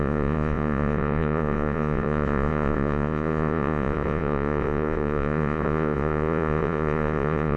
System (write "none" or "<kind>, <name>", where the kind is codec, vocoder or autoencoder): vocoder, Vocos